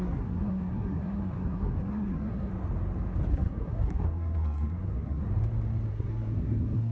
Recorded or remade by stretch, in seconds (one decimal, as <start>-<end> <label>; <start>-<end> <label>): 0.0-2.5 remade; 2.5-3.3 recorded; 3.3-5.2 remade; 5.2-5.9 recorded; 5.9-6.9 remade